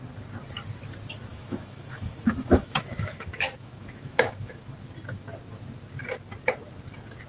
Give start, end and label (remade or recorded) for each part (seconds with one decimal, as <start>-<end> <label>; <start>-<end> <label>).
0.0-1.3 recorded; 1.3-4.6 remade; 4.6-7.3 recorded

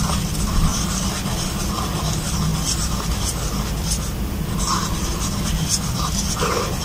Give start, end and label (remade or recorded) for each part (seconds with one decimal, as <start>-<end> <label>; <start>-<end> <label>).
0.0-6.8 recorded

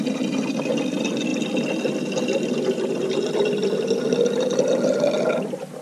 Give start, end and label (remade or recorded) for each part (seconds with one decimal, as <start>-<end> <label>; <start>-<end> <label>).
0.0-5.8 recorded

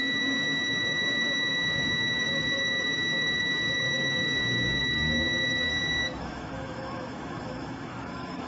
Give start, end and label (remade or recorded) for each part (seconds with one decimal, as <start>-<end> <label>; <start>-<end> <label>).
0.0-5.7 remade; 5.7-6.2 recorded; 6.2-8.5 remade

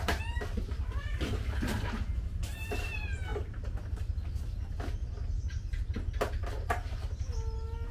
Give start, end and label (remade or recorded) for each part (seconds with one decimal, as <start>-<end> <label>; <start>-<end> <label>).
0.0-7.9 recorded

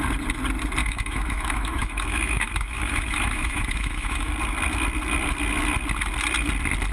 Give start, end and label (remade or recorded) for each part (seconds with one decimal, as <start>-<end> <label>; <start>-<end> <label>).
0.0-0.8 recorded; 0.8-4.3 remade; 4.3-6.9 recorded